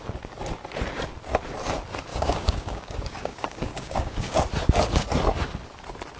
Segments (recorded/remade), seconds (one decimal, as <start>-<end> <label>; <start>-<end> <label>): 0.0-2.1 recorded; 2.1-4.4 remade; 4.4-6.2 recorded